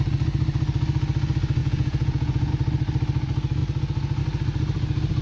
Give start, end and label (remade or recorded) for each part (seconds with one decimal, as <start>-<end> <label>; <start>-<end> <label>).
0.0-1.6 recorded; 1.6-2.5 remade; 2.5-5.2 recorded